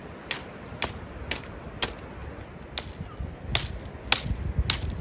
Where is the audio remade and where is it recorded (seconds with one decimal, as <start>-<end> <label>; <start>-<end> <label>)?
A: 0.0-5.0 recorded